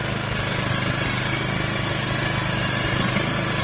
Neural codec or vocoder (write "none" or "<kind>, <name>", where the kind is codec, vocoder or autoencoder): none